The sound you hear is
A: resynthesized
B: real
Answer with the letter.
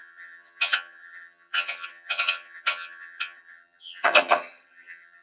A